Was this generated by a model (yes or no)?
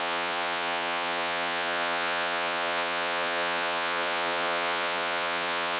yes